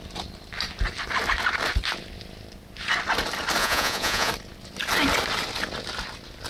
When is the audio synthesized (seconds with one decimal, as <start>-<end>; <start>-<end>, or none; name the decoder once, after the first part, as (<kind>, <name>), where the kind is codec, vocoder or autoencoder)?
3.6-4.3 (vocoder, Vocos)